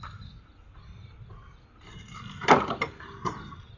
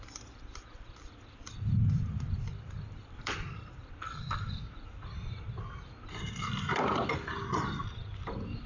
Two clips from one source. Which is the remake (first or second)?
second